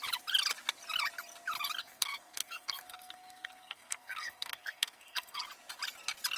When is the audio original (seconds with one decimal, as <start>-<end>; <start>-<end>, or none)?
0.0-1.8; 5.4-6.4